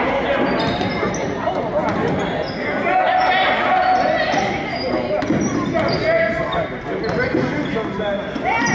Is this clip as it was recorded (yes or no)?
yes